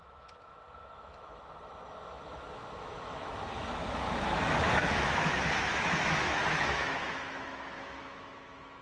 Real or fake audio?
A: fake